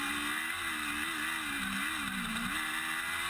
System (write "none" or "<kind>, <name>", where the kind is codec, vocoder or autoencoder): none